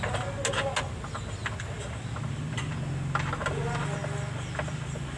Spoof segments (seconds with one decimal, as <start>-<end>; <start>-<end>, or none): none